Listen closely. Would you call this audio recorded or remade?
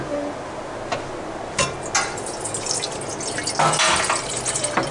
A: recorded